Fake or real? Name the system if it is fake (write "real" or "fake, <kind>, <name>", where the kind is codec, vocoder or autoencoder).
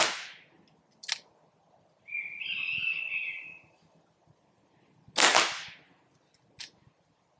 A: real